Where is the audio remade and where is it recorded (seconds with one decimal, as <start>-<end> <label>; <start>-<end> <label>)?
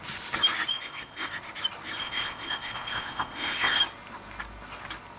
0.0-0.7 recorded; 0.7-1.3 remade; 1.3-2.0 recorded; 2.0-3.8 remade; 3.8-5.2 recorded